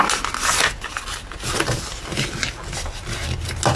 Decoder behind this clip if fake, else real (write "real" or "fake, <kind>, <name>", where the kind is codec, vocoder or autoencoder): real